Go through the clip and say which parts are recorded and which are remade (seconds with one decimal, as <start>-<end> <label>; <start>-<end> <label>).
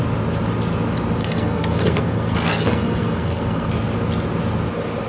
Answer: 0.0-1.2 recorded; 1.2-3.7 remade; 3.7-5.1 recorded